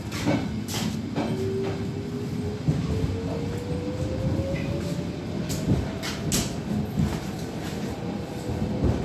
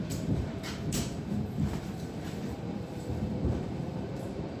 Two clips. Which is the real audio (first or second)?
first